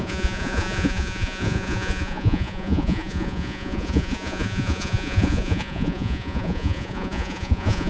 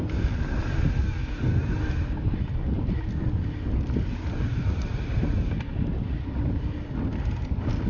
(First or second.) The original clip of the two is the second